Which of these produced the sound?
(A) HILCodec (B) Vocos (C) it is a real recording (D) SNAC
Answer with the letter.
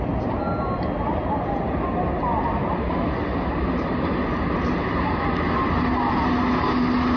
C